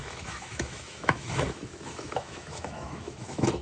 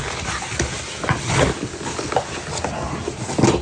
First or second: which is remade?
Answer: first